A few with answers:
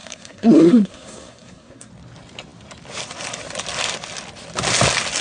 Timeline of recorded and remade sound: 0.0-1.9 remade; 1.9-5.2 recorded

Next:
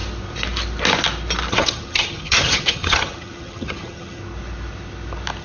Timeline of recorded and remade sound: 0.0-1.5 recorded; 1.5-4.2 remade; 4.2-5.4 recorded